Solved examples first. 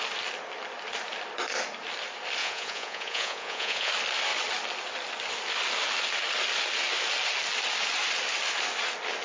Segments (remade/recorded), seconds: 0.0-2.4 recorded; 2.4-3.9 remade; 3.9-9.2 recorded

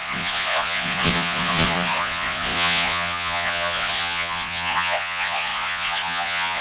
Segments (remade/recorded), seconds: 0.0-6.6 remade